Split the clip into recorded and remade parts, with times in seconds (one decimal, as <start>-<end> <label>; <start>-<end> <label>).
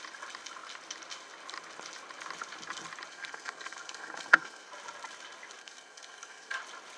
0.0-3.1 recorded; 3.1-4.7 remade; 4.7-5.6 recorded; 5.6-6.6 remade; 6.6-7.0 recorded